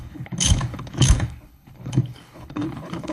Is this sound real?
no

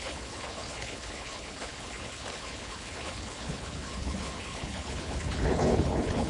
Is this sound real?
no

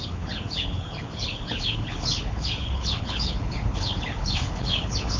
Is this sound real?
no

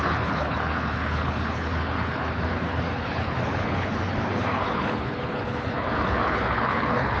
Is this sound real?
no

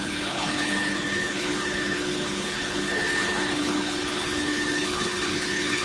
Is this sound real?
no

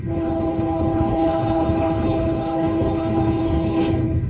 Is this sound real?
no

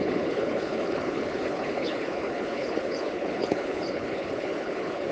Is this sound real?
no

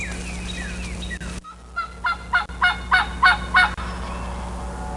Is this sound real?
yes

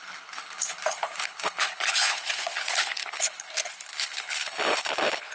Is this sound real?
no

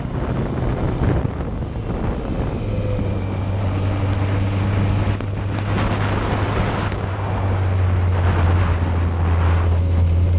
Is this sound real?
yes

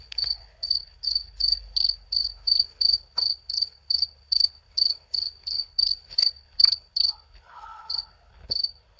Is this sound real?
no